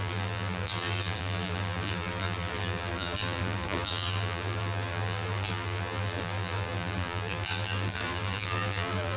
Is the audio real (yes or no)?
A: no